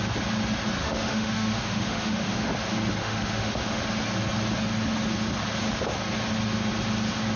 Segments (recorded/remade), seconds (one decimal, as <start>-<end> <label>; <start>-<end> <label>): 0.0-0.8 recorded; 0.8-2.5 remade; 2.5-3.0 recorded; 3.0-3.8 remade; 3.8-7.4 recorded